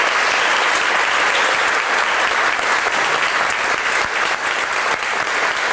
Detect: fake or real real